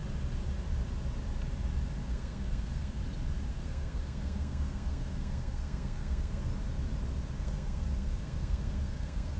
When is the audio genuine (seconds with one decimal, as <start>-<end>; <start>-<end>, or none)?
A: 0.0-2.1; 3.0-3.5; 6.5-7.4